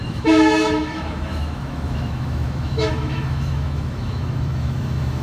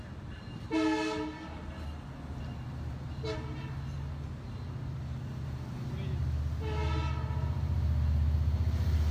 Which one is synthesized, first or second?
first